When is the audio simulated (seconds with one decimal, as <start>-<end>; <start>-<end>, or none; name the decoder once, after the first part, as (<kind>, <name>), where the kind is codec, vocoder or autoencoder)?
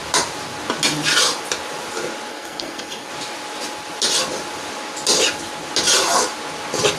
2.3-3.1 (codec, SNAC)